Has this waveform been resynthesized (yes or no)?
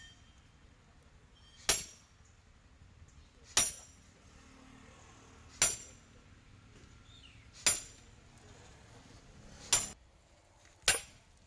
no